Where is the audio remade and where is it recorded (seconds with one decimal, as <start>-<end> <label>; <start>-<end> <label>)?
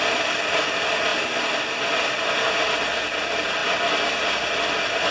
0.0-5.1 recorded